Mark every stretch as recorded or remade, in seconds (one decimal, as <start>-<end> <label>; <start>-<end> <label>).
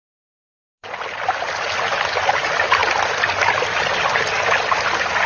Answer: 0.0-5.3 recorded